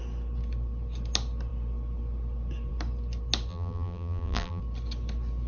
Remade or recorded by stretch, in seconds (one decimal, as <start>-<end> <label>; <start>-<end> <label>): 0.0-3.5 recorded; 3.5-4.6 remade; 4.6-5.5 recorded